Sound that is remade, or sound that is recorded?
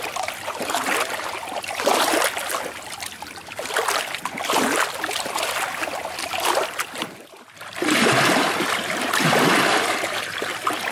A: recorded